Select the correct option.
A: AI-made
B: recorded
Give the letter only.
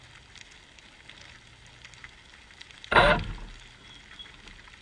B